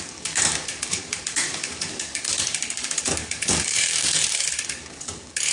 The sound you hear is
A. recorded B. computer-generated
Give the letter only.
B